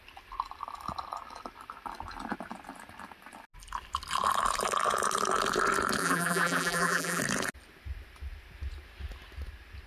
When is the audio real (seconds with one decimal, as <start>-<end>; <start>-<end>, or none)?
0.0-6.0; 7.2-9.9